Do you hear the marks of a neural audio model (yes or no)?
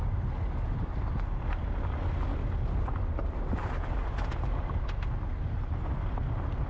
no